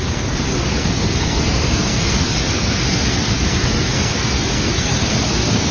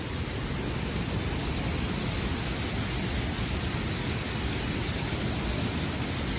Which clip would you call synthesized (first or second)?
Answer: first